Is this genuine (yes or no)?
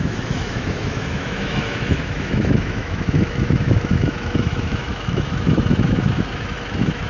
no